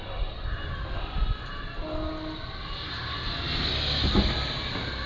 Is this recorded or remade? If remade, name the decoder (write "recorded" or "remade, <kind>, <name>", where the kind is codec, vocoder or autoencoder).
recorded